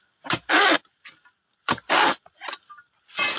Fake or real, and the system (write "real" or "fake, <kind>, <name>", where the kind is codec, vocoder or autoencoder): real